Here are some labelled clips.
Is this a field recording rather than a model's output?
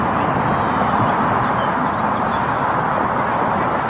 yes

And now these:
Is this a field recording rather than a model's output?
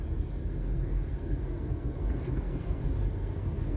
no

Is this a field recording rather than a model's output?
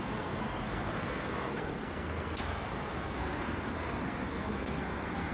no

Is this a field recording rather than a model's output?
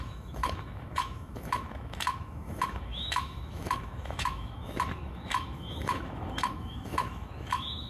no